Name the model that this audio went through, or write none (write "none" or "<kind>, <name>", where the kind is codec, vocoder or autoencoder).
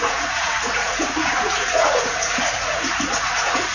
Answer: vocoder, Vocos